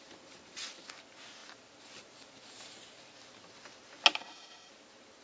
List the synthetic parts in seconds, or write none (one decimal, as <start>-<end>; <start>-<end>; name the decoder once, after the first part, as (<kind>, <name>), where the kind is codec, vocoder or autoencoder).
4.2-4.7 (autoencoder, DAC-VAE)